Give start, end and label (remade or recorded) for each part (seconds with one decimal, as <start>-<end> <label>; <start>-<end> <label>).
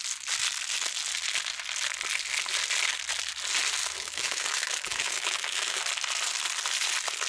0.0-3.8 recorded; 3.8-5.8 remade; 5.8-7.3 recorded